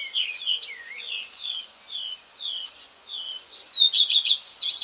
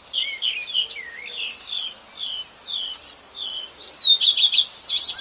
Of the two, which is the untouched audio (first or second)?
second